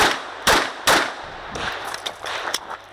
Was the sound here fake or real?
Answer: fake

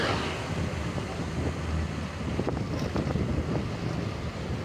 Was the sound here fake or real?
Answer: real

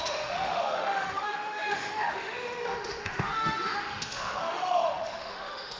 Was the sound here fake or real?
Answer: fake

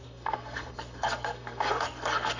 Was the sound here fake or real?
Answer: fake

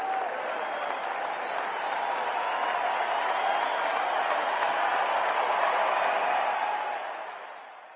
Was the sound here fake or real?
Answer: real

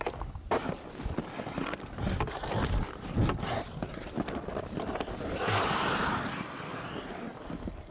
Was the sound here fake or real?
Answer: real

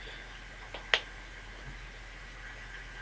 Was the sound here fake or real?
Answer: real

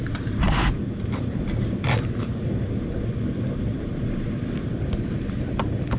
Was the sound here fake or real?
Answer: real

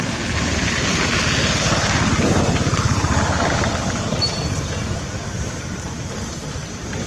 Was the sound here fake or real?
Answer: real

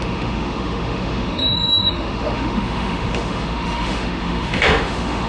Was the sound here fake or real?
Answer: fake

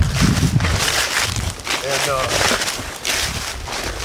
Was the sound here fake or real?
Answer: real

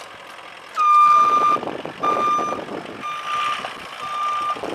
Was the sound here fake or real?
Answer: real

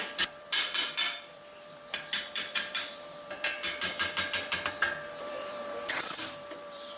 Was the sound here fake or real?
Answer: fake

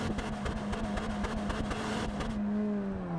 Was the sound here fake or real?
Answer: real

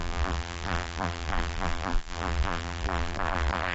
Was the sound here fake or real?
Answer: fake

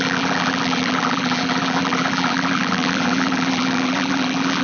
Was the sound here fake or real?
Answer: fake